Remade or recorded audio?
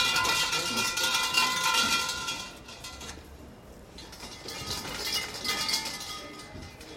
recorded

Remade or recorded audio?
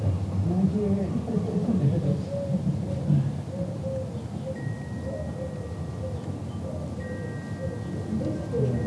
recorded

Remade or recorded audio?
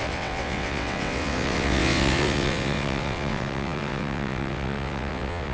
remade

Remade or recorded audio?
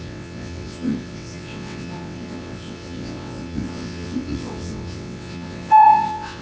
remade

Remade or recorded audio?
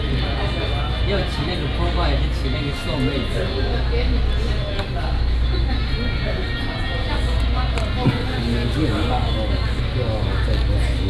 recorded